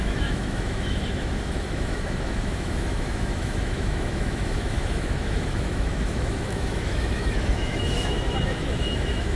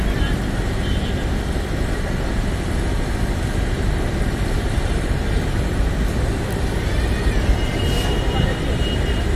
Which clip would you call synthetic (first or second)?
first